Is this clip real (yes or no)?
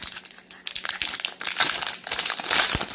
yes